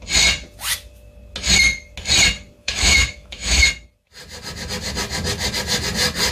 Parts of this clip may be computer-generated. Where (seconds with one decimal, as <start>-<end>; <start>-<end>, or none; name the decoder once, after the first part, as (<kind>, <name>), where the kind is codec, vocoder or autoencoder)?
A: 2.6-3.6 (autoencoder, DAC-VAE)

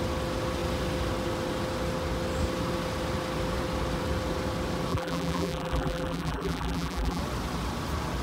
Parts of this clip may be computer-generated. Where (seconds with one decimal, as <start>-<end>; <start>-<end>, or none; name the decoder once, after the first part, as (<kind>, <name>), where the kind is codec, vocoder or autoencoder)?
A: 4.9-7.2 (vocoder, BigVGAN v2)

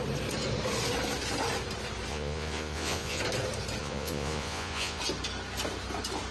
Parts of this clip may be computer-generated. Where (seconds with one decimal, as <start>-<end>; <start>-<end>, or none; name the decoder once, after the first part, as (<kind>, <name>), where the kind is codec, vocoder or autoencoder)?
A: 2.1-3.2 (vocoder, Vocos); 3.8-5.0

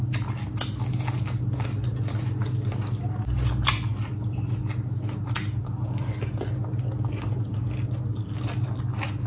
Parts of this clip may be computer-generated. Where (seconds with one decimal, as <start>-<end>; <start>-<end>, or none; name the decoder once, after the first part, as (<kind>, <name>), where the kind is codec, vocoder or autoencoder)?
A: none

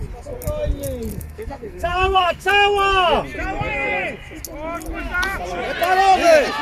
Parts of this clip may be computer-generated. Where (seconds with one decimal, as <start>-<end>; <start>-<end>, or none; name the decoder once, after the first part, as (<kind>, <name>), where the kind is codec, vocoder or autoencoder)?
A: 1.1-2.5 (codec, SNAC)

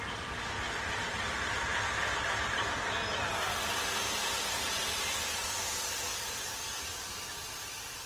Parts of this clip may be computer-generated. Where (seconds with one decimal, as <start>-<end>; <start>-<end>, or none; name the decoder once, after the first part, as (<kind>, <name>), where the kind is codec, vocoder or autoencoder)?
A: none